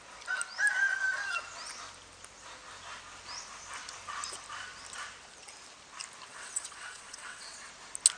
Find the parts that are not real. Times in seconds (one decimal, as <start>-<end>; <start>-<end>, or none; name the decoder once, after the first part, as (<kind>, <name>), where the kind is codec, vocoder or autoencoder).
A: 6.3-7.7 (vocoder, WaveNeXt)